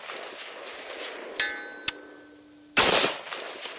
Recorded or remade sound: recorded